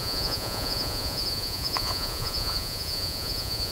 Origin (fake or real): fake